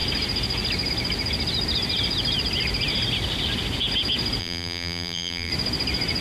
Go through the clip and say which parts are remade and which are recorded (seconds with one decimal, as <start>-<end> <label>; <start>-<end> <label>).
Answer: 0.0-4.4 recorded; 4.4-5.5 remade; 5.5-6.2 recorded